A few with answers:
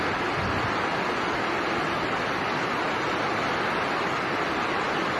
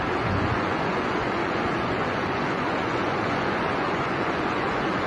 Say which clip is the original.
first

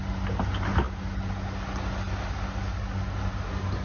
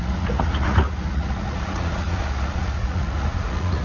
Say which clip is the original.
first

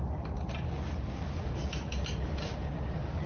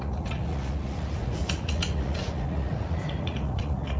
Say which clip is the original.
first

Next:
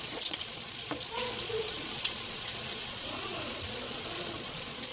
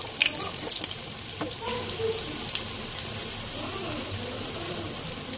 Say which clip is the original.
second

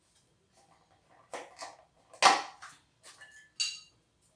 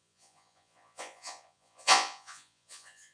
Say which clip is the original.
first